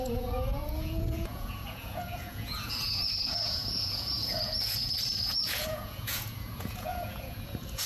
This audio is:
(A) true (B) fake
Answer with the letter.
B